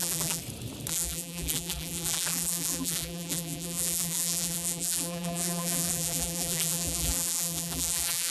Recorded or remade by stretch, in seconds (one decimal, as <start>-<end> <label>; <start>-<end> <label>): 0.0-0.4 remade; 0.4-0.9 recorded; 0.9-8.3 remade